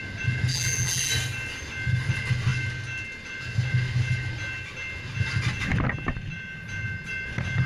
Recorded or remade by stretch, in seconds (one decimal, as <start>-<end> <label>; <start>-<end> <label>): 0.0-0.5 recorded; 0.5-1.1 remade; 1.1-7.7 recorded